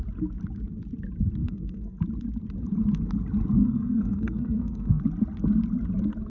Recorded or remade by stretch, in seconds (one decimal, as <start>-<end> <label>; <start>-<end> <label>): 0.0-1.4 recorded; 1.4-2.0 remade; 2.0-3.6 recorded; 3.6-5.0 remade; 5.0-6.3 recorded